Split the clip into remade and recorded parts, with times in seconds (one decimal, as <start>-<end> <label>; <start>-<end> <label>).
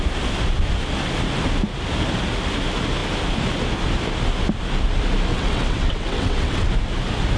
0.0-5.3 recorded; 5.3-6.7 remade; 6.7-7.4 recorded